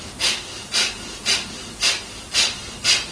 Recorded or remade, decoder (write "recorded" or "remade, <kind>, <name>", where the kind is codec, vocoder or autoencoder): recorded